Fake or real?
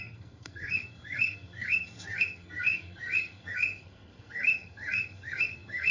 fake